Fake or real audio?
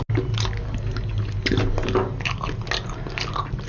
real